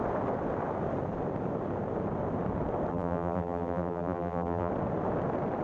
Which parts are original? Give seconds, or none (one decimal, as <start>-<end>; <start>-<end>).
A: 0.0-2.9; 4.7-5.6